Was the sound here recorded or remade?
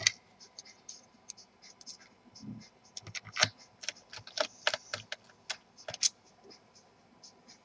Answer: recorded